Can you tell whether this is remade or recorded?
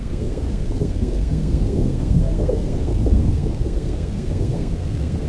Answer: remade